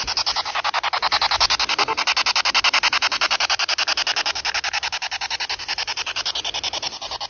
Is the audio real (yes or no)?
yes